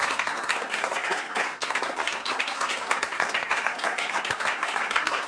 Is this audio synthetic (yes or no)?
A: yes